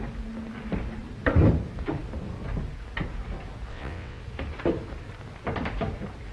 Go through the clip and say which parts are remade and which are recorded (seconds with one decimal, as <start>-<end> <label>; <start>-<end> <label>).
0.0-3.7 recorded; 3.7-4.2 remade; 4.2-6.3 recorded